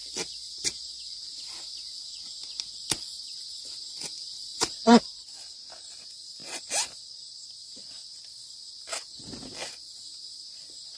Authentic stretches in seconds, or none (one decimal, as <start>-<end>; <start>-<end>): 0.6-11.0